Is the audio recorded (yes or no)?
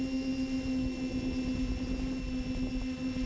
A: yes